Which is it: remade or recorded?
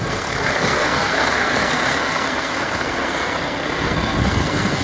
remade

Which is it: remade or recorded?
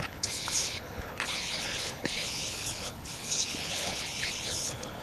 remade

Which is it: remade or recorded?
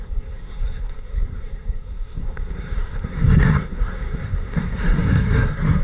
remade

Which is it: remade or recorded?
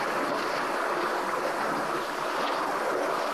recorded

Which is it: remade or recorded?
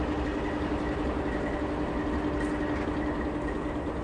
recorded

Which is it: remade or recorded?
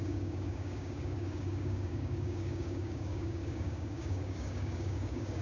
remade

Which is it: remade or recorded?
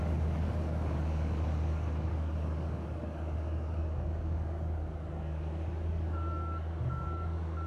remade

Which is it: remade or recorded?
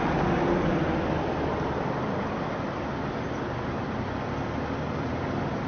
recorded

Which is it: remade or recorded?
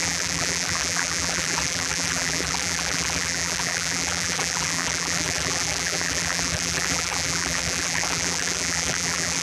remade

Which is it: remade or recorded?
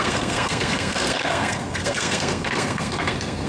remade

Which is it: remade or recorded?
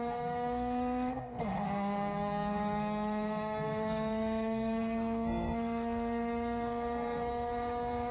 remade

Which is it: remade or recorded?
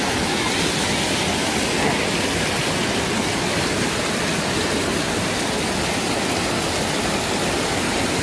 recorded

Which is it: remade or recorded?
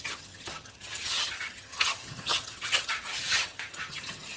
remade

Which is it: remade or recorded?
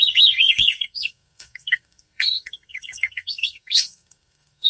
remade